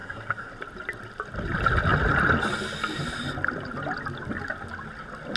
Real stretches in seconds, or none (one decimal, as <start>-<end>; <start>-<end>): 0.5-5.4